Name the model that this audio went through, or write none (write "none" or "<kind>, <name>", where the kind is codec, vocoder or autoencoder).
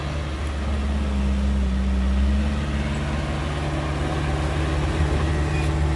none